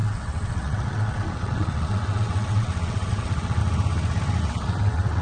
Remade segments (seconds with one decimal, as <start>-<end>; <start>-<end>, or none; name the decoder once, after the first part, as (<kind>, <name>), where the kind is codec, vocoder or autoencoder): 0.0-3.6 (vocoder, WaveNeXt); 4.4-5.2